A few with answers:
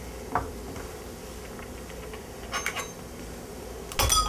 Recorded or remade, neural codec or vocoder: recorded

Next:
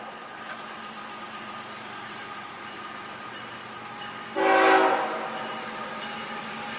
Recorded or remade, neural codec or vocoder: recorded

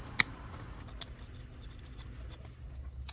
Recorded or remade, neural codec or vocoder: recorded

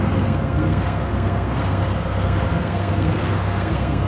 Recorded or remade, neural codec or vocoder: remade, codec, SNAC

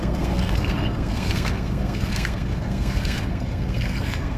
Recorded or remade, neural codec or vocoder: remade, codec, SNAC